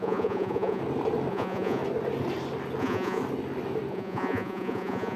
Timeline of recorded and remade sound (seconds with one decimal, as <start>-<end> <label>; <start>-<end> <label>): 0.0-0.8 remade; 0.8-1.3 recorded; 1.3-1.8 remade; 1.8-2.8 recorded; 2.8-3.2 remade; 3.2-3.9 recorded; 3.9-5.2 remade